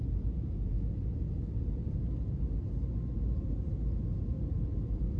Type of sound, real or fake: real